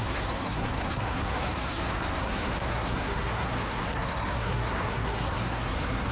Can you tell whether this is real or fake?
fake